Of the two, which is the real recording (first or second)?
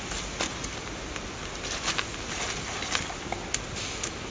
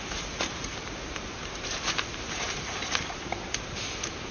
first